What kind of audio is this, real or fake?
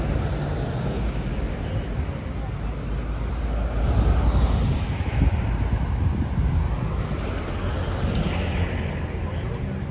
real